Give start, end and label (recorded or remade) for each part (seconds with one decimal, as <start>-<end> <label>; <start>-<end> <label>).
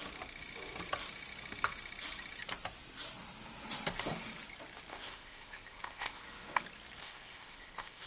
0.0-4.9 recorded; 4.9-6.2 remade; 6.2-7.0 recorded; 7.0-8.1 remade